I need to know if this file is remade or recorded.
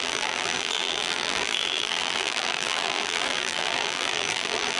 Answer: remade